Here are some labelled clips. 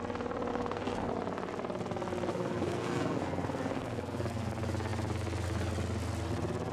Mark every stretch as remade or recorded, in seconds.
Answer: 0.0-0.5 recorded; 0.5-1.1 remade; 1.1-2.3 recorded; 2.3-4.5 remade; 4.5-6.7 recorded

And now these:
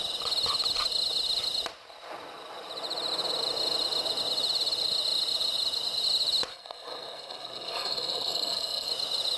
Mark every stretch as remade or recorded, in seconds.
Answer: 0.0-6.5 recorded; 6.5-8.9 remade; 8.9-9.4 recorded

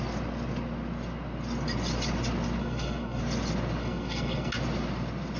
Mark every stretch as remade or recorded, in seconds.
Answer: 0.0-2.6 recorded; 2.6-3.2 remade; 3.2-3.8 recorded; 3.8-4.5 remade; 4.5-5.4 recorded

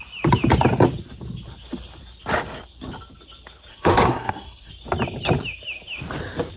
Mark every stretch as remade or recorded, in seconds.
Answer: 0.0-3.7 recorded; 3.7-4.7 remade; 4.7-6.6 recorded

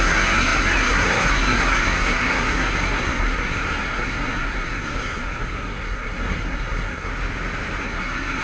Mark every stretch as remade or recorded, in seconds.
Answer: 0.0-7.1 remade; 7.1-7.8 recorded; 7.8-8.4 remade

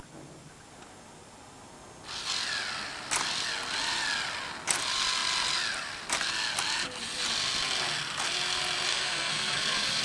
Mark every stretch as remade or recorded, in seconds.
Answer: 0.0-8.9 recorded; 8.9-10.0 remade

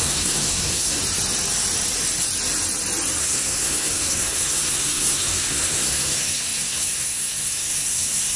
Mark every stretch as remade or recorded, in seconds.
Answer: 0.0-1.0 remade; 1.0-3.2 recorded; 3.2-8.4 remade